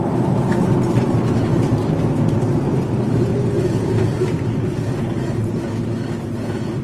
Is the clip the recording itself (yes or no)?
yes